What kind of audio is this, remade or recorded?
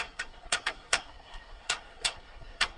remade